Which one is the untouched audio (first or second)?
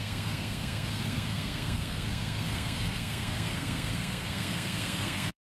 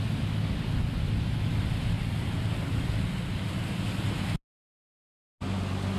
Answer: second